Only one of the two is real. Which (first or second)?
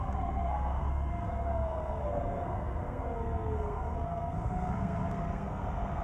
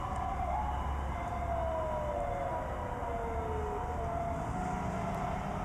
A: second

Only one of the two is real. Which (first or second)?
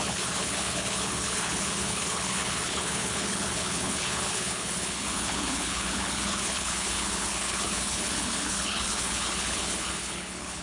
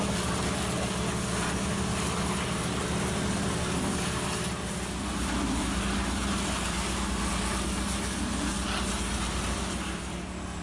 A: second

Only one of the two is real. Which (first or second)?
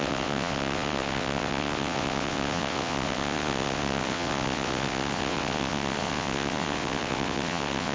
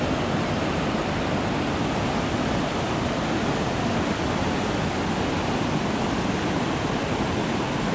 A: second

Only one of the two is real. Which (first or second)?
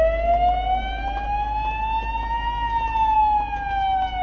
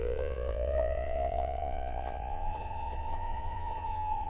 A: first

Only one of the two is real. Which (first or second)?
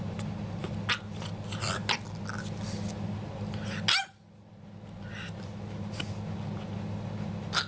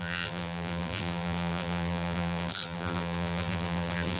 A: first